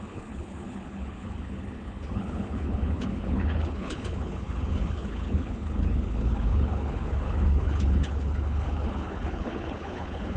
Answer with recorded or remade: remade